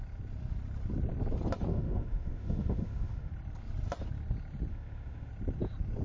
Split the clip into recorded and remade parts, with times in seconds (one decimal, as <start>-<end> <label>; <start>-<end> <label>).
0.0-1.7 recorded; 1.7-3.3 remade; 3.3-4.7 recorded; 4.7-5.3 remade; 5.3-6.0 recorded